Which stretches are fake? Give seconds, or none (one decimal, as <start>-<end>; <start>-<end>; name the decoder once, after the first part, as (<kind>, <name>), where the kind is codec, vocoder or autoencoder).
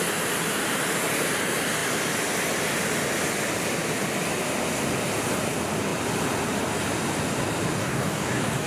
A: 7.8-8.7 (codec, DAC)